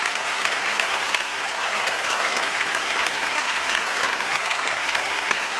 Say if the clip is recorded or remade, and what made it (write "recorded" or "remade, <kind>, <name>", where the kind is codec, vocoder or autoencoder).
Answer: remade, codec, SNAC